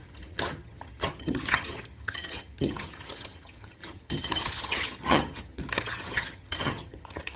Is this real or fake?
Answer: fake